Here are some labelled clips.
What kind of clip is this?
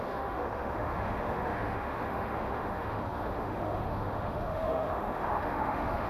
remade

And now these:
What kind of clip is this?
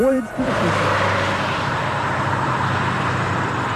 remade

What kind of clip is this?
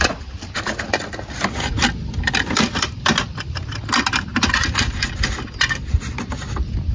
recorded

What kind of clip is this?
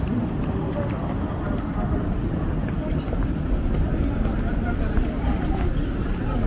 recorded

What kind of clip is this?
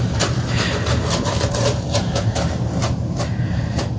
remade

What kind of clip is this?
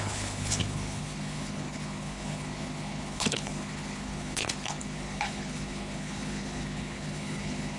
remade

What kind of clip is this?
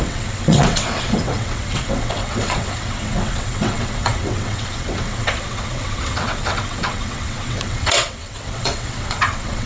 remade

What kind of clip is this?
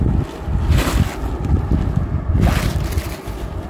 recorded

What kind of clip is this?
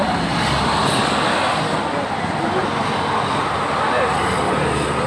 recorded